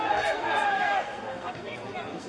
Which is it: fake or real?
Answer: fake